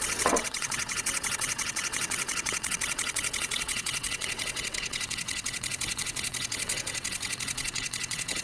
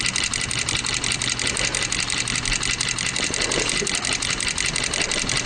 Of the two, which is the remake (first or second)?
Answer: first